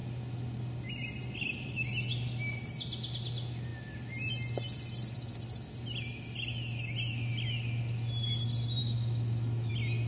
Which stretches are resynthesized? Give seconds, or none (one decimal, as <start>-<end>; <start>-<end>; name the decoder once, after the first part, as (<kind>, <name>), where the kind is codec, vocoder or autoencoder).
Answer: 8.8-9.7 (autoencoder, DAC-VAE)